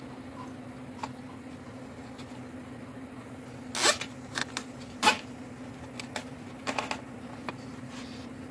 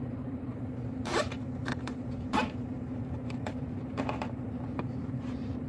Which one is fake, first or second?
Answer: second